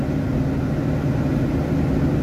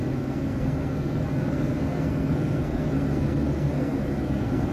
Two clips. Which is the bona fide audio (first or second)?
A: first